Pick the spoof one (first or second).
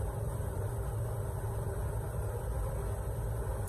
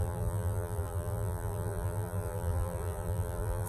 second